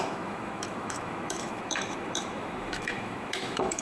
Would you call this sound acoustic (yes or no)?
no